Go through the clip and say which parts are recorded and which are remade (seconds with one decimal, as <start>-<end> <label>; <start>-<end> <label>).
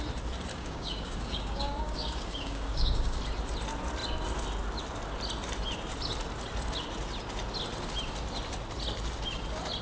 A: 0.0-0.5 recorded; 0.5-3.2 remade; 3.2-9.8 recorded